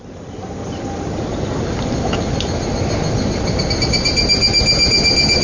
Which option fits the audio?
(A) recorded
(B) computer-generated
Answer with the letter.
A